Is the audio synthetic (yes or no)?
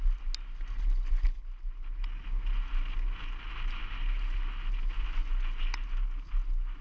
no